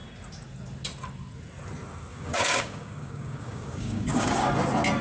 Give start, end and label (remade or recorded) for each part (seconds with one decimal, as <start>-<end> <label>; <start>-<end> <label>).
0.0-2.1 recorded; 2.1-4.5 remade; 4.5-5.0 recorded